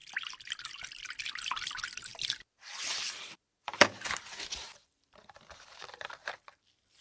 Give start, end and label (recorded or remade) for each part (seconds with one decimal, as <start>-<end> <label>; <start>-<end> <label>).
0.0-2.1 recorded; 2.1-6.3 remade; 6.3-7.0 recorded